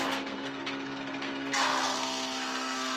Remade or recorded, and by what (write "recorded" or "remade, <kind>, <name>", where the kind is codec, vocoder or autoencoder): remade, codec, SNAC